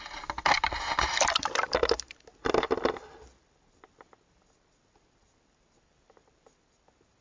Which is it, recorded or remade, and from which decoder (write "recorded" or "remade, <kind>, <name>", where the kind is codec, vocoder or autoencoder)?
recorded